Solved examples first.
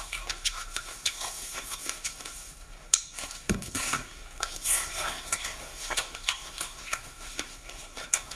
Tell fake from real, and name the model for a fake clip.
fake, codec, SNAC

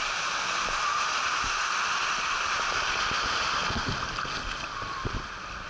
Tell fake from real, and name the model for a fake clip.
real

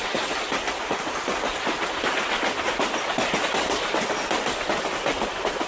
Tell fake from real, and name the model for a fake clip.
real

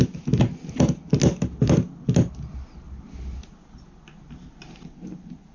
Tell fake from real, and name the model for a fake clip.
real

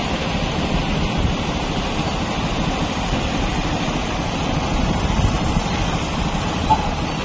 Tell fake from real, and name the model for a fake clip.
fake, vocoder, BigVGAN v2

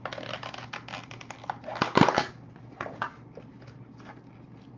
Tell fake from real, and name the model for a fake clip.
real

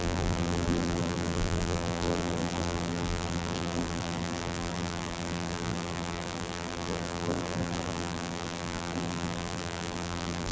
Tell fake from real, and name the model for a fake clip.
fake, vocoder, BigVGAN v2